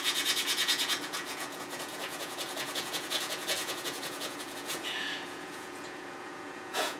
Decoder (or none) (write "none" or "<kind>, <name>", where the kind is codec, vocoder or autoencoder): vocoder, Vocos